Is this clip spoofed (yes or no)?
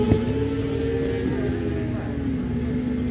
no